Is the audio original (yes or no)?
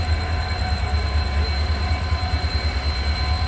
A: yes